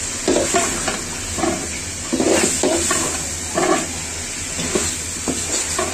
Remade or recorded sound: recorded